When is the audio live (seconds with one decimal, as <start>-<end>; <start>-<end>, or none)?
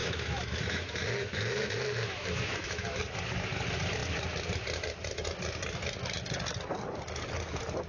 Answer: 3.0-7.9